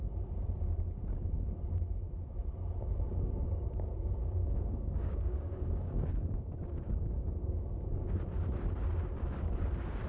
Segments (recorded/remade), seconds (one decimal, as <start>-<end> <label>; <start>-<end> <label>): 0.0-3.1 recorded; 3.1-8.1 remade; 8.1-10.1 recorded